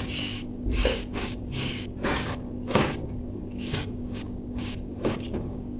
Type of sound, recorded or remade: remade